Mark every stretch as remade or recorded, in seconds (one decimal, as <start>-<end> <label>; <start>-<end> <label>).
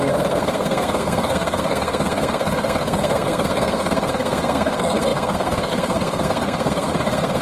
0.0-7.4 remade